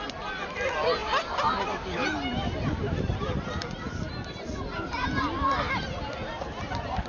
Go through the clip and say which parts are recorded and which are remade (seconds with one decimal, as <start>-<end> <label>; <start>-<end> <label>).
0.0-1.0 recorded; 1.0-2.5 remade; 2.5-7.1 recorded